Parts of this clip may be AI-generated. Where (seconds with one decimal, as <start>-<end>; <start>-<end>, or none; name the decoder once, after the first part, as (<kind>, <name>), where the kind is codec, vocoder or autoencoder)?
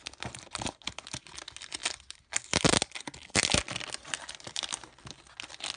none